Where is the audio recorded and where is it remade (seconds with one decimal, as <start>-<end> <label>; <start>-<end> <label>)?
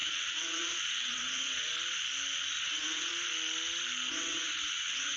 0.0-1.7 remade; 1.7-2.6 recorded; 2.6-3.1 remade; 3.1-4.1 recorded; 4.1-5.2 remade